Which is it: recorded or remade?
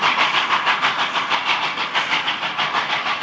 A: recorded